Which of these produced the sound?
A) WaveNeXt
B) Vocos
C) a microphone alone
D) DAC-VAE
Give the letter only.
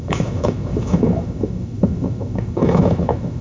D